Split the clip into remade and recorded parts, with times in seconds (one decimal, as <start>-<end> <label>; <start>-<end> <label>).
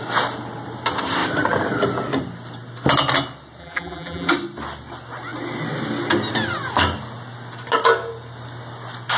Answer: 0.0-3.6 recorded; 3.6-4.3 remade; 4.3-9.2 recorded